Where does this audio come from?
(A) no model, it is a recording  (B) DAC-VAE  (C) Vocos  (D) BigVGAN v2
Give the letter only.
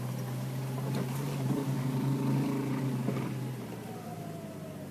A